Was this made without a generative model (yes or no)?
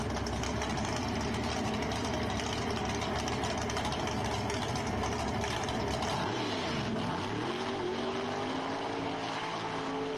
yes